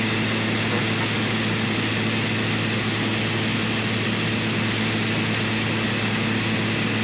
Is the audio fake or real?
real